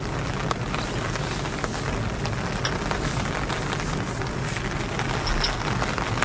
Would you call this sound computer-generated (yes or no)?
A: no